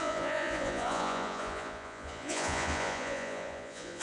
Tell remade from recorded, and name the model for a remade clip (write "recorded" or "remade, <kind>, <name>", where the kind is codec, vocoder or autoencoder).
remade, vocoder, Vocos